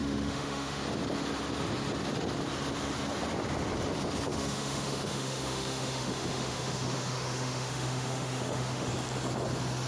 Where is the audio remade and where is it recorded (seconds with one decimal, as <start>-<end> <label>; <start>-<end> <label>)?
0.0-0.8 remade; 0.8-4.3 recorded; 4.3-8.9 remade; 8.9-9.9 recorded